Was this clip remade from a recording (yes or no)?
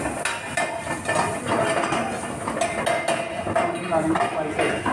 no